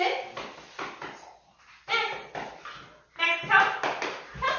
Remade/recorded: recorded